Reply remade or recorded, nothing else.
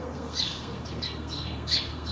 remade